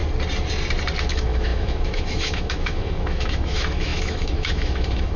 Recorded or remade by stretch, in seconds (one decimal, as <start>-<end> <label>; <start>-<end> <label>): 0.0-1.1 recorded; 1.1-5.2 remade